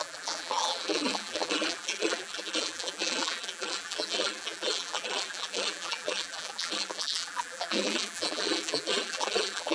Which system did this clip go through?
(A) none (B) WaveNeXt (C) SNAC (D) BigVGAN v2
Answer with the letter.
D